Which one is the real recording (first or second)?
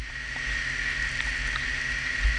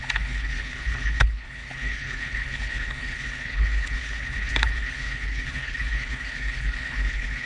first